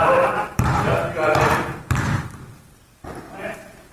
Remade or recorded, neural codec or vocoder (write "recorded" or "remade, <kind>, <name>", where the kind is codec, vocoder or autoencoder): remade, vocoder, BigVGAN v2